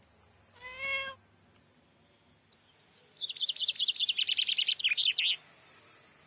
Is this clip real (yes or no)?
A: yes